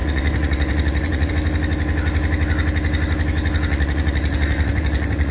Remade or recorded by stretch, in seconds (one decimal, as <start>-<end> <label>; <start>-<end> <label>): 0.0-1.3 remade; 1.3-3.7 recorded; 3.7-5.3 remade

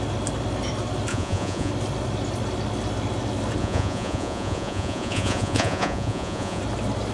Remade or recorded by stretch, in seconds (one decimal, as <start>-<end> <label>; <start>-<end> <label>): 0.0-1.1 recorded; 1.1-1.7 remade; 1.7-3.6 recorded; 3.6-6.6 remade; 6.6-7.1 recorded

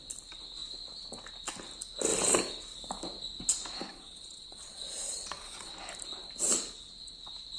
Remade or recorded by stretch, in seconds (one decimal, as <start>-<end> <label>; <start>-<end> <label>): 0.0-3.9 recorded; 3.9-5.7 remade; 5.7-7.6 recorded

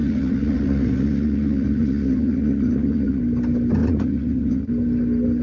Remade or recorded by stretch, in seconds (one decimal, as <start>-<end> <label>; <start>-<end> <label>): 0.0-3.2 remade; 3.2-3.8 recorded; 3.8-4.7 remade; 4.7-5.4 recorded

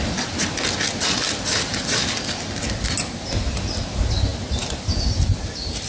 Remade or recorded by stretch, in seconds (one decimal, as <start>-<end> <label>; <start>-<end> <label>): 0.0-5.9 recorded